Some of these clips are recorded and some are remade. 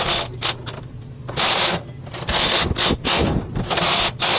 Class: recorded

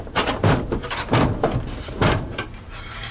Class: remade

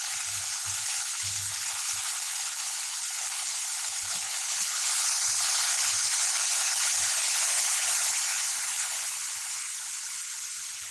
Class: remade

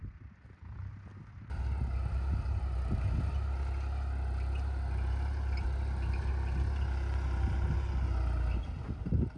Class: recorded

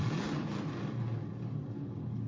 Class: recorded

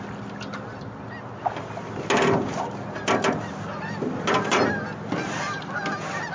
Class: recorded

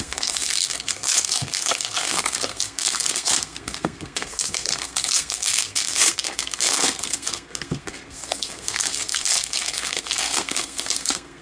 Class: remade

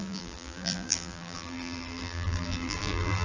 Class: remade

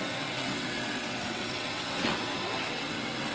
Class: remade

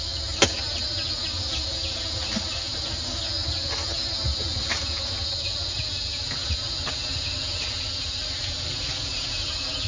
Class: recorded